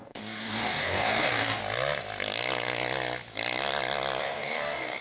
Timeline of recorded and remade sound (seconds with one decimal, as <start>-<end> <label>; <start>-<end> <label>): 0.0-1.6 remade; 1.6-4.2 recorded; 4.2-5.0 remade